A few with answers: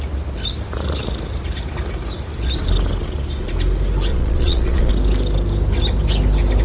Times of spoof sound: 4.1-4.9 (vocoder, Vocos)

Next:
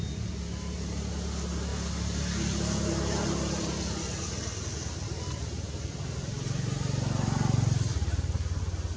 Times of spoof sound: none

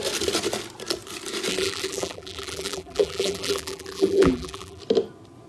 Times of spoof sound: 1.5-4.8 (vocoder, BigVGAN v2)

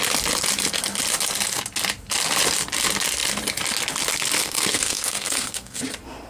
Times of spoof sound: 4.4-5.8 (codec, SNAC)